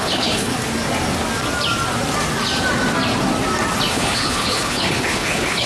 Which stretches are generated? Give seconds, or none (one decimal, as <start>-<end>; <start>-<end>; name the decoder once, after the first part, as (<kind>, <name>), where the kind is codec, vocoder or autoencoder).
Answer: 0.0-0.5 (codec, HILCodec); 3.9-5.7